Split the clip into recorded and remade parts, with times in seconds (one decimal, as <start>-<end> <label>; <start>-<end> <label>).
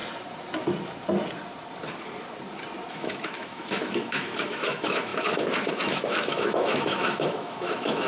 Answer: 0.0-2.9 recorded; 2.9-8.1 remade